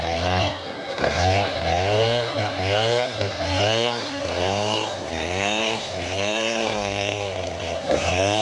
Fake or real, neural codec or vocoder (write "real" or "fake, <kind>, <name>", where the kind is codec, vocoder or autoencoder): fake, codec, SNAC